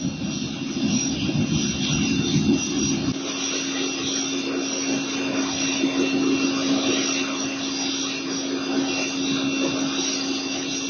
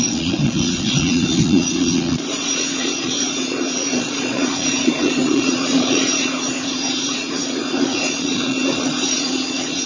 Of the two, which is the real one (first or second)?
first